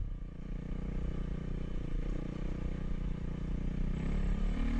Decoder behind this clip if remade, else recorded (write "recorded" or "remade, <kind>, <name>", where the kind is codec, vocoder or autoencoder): recorded